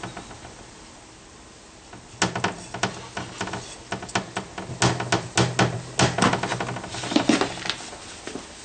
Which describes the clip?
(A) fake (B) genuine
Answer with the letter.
B